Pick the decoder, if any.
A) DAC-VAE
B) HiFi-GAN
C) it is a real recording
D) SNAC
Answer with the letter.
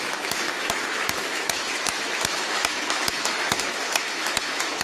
A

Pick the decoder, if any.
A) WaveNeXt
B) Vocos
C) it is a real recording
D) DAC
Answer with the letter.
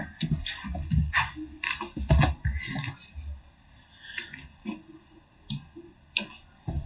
C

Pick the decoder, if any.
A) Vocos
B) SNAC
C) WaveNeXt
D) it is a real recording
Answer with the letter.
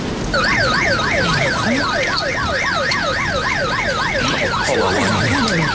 D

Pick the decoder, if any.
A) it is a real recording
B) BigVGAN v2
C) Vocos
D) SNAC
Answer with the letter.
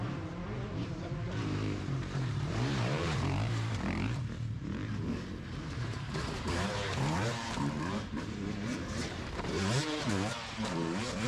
B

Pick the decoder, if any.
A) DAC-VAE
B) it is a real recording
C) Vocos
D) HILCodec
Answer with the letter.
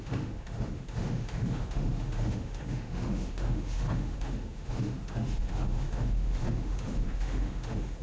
A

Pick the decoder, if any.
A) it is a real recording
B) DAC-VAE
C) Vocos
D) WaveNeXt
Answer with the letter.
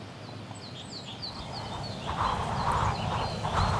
A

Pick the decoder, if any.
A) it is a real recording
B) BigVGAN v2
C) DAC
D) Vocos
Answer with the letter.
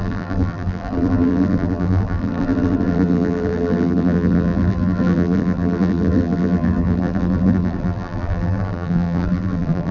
B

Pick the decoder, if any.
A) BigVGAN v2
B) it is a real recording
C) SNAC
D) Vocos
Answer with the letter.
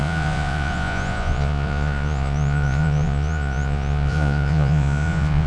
D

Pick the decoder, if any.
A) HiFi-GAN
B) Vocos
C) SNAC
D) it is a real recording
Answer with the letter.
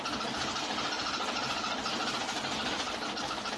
D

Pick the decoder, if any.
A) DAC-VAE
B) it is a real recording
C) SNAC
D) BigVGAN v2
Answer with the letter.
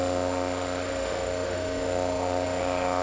A